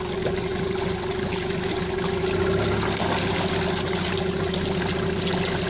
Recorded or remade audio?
recorded